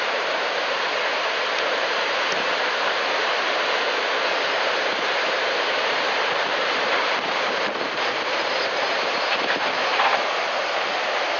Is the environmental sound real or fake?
fake